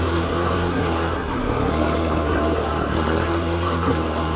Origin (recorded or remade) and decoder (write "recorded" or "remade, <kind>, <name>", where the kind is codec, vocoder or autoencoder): remade, codec, SNAC